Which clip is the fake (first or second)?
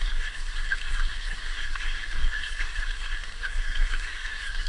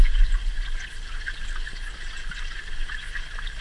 first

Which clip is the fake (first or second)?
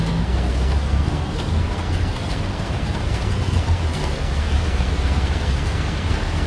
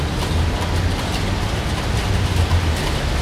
first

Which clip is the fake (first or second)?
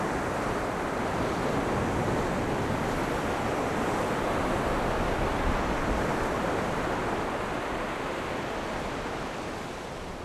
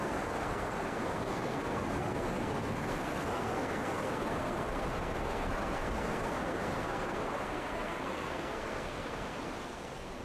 second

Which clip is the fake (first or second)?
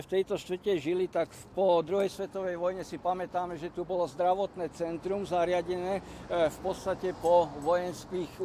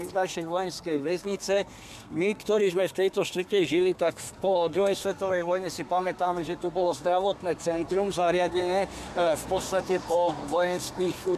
second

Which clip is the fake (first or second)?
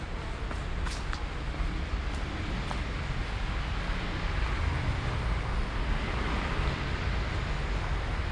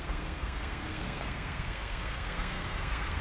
second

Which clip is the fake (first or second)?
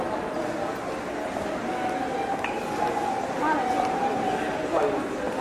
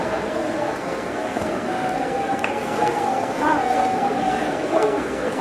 second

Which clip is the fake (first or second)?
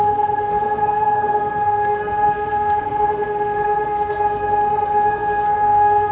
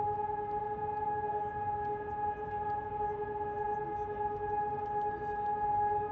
first